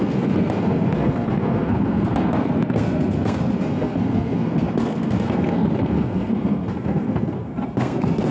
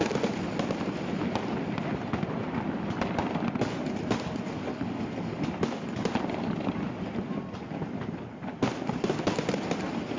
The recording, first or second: second